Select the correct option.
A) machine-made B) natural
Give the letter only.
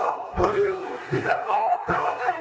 A